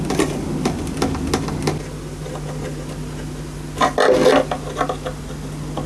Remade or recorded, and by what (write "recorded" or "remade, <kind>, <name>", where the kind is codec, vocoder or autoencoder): recorded